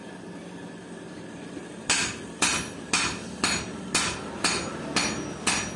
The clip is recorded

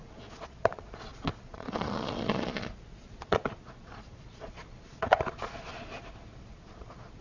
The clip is remade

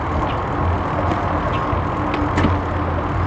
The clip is recorded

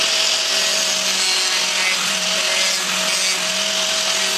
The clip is recorded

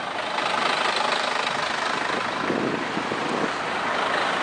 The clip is recorded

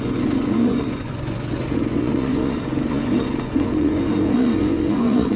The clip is remade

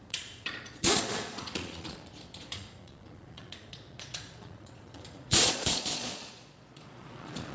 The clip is remade